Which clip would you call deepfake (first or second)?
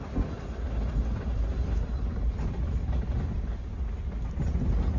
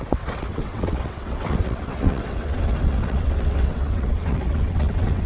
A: second